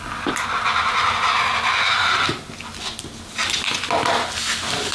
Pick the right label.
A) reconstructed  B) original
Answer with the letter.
B